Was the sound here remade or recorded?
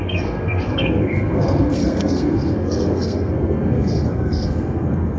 remade